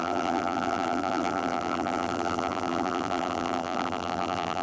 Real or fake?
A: fake